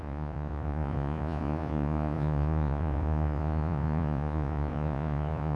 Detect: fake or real fake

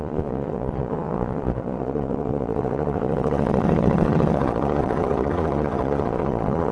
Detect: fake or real fake